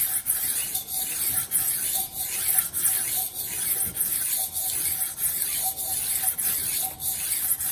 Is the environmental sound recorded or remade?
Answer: recorded